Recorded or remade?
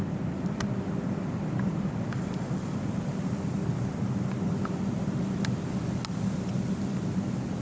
recorded